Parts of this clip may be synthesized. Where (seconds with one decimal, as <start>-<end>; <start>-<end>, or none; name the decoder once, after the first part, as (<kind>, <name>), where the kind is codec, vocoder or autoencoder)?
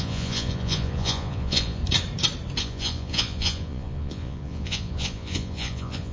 0.0-1.8 (vocoder, Vocos); 2.6-6.1